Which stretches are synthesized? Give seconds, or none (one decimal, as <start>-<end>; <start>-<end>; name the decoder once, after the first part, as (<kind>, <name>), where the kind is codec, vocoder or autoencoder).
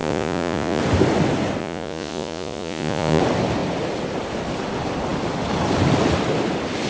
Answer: 0.0-0.8 (vocoder, Vocos); 1.6-3.2